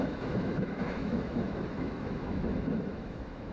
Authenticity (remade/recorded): remade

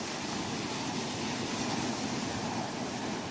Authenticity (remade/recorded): recorded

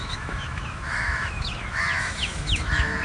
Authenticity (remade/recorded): remade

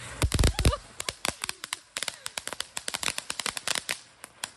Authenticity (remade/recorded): recorded